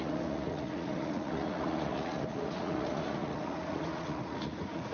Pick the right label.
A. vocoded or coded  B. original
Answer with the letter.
A